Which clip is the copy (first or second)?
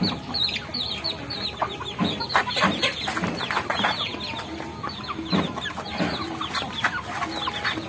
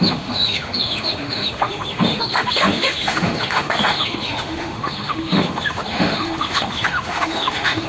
second